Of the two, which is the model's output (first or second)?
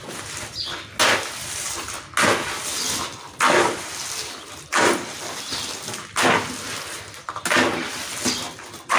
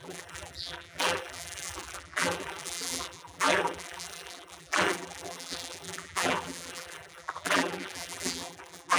second